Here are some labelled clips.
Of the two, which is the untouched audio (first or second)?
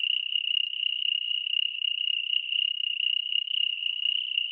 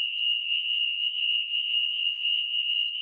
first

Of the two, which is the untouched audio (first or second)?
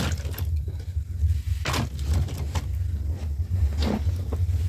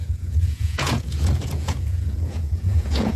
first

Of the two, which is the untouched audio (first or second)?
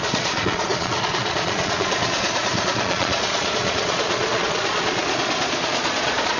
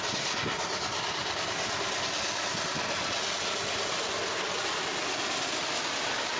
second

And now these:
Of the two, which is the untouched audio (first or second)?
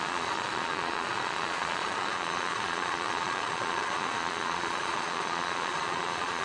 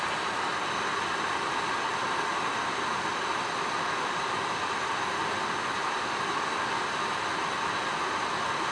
second